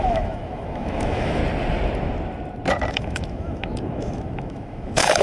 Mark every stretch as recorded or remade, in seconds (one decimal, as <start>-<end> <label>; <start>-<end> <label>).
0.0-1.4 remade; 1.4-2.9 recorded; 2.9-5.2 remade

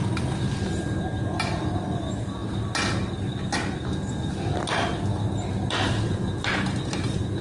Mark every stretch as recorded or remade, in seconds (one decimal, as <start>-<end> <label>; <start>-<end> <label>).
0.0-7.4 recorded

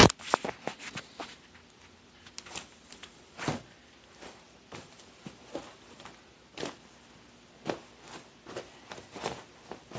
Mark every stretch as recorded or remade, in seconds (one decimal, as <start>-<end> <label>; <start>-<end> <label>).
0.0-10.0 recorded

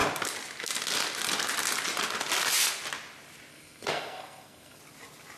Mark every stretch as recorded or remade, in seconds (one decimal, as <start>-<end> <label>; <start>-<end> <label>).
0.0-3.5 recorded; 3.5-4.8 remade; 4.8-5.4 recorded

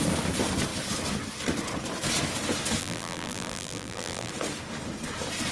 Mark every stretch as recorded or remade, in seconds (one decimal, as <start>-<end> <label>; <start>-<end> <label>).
0.0-2.8 recorded; 2.8-4.3 remade; 4.3-5.5 recorded

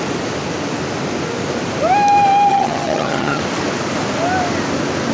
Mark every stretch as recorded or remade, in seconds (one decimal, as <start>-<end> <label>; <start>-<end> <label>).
0.0-2.5 recorded; 2.5-3.4 remade; 3.4-5.1 recorded

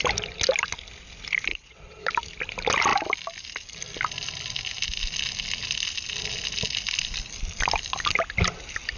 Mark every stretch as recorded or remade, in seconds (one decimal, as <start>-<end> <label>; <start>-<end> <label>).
0.0-1.5 recorded; 1.5-2.0 remade; 2.0-9.0 recorded

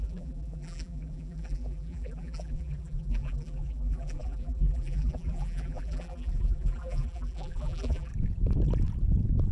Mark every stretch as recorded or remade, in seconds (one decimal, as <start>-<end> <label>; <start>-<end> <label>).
0.0-8.1 remade; 8.1-9.5 recorded